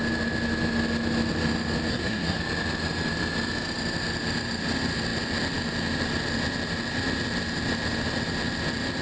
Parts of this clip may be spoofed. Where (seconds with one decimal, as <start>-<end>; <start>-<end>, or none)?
1.9-2.4